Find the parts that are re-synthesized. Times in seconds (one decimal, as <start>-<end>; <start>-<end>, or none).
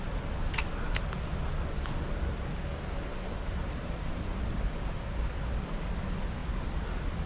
3.1-5.3